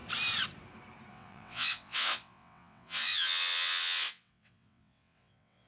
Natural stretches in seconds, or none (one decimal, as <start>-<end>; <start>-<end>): 0.0-1.1